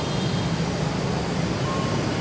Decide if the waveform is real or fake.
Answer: real